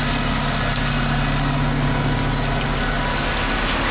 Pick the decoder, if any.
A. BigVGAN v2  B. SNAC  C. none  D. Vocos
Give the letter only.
C